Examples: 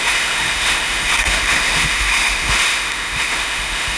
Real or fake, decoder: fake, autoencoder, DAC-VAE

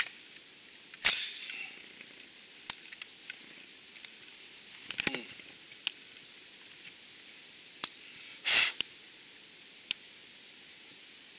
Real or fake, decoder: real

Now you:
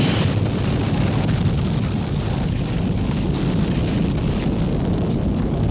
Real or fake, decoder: real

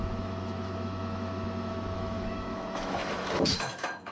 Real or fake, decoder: fake, autoencoder, DAC-VAE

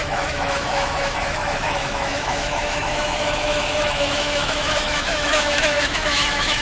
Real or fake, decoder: fake, autoencoder, DAC-VAE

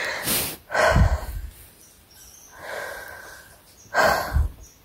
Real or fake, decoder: real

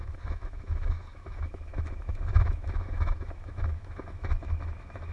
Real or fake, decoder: fake, autoencoder, DAC-VAE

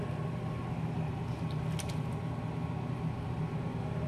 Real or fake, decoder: real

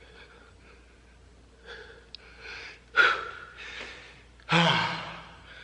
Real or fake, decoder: real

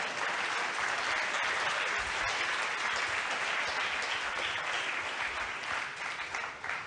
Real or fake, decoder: real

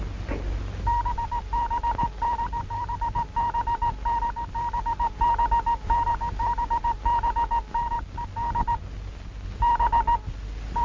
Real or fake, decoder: real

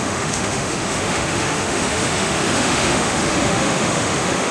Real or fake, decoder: fake, autoencoder, DAC-VAE